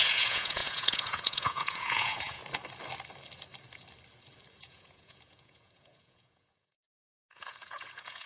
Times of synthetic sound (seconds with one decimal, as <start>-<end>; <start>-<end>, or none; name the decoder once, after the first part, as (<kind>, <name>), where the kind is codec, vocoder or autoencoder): 0.0-2.4 (vocoder, Vocos); 4.6-8.3

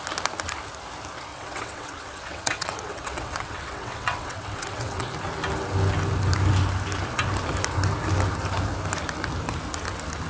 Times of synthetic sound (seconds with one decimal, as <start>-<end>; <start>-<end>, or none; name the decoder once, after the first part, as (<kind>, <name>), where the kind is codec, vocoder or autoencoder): 1.3-5.1 (vocoder, WaveNeXt)

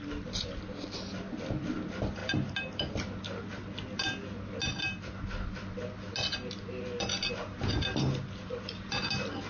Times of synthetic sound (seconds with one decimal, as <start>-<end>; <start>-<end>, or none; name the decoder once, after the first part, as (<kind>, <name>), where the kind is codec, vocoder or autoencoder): none